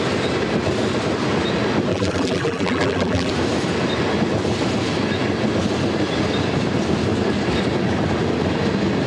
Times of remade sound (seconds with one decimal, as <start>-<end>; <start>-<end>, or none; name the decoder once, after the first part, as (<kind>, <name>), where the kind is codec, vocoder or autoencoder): 1.9-3.3 (vocoder, BigVGAN v2)